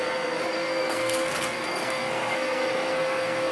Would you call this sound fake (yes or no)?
yes